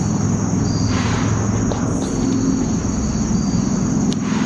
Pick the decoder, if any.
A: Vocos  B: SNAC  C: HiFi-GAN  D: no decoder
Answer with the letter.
D